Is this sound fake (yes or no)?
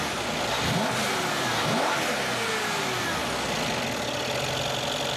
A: no